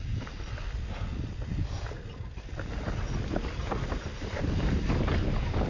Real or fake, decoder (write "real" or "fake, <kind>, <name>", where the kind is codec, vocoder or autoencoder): real